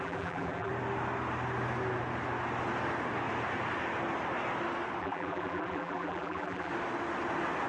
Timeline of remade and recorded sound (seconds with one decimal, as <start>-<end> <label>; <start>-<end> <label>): 0.0-0.7 remade; 0.7-5.0 recorded; 5.0-6.7 remade; 6.7-7.7 recorded